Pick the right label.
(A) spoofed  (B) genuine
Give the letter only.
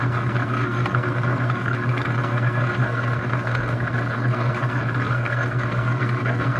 A